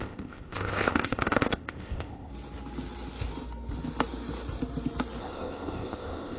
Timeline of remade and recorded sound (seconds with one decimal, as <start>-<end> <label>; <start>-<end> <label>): 0.0-2.3 remade; 2.3-5.2 recorded; 5.2-6.4 remade